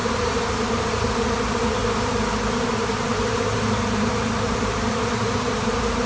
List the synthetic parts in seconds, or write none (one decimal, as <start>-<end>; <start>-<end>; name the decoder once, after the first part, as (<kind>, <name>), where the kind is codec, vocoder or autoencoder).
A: 0.0-1.8 (vocoder, BigVGAN v2); 2.6-6.1